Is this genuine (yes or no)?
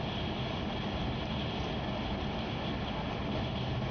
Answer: yes